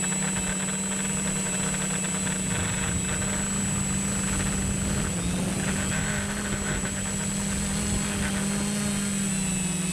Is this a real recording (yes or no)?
yes